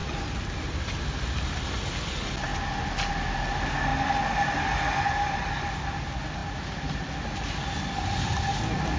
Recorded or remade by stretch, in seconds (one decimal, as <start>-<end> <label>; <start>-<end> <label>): 0.0-6.4 recorded; 6.4-7.0 remade; 7.0-9.0 recorded